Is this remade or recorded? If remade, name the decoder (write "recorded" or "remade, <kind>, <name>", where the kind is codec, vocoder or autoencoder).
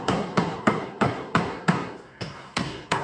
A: remade, codec, SNAC